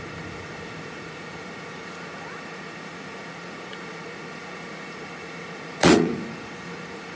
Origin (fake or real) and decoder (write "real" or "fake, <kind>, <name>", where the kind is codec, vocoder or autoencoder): fake, vocoder, Vocos